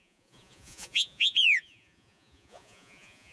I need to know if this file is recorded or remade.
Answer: remade